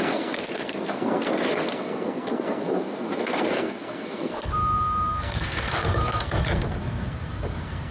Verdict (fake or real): fake